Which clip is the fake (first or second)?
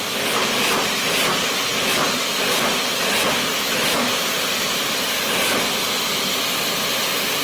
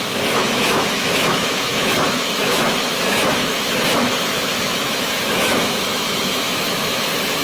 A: second